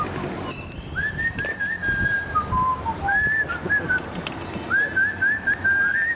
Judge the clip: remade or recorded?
recorded